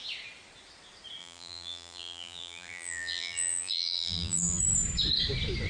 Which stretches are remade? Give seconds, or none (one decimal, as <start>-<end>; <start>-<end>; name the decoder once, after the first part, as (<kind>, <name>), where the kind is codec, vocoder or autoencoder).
1.2-4.6 (vocoder, BigVGAN v2)